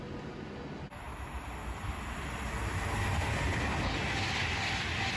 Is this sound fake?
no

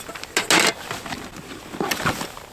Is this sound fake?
no